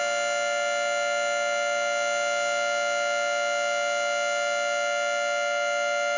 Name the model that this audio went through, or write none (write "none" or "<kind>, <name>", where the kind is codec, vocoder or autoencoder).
none